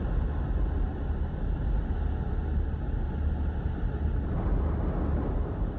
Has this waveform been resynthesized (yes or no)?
no